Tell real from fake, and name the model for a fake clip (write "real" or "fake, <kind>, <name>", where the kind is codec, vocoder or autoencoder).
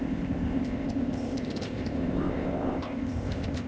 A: fake, codec, ZipCodec